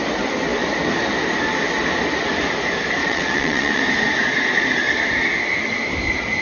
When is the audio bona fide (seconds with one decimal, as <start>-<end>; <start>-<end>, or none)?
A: 0.0-3.0; 3.8-6.4